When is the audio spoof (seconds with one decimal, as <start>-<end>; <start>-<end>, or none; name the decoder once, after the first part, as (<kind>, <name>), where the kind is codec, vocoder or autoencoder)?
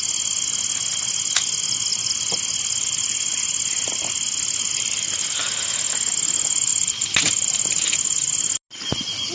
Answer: 1.9-4.7 (vocoder, BigVGAN v2)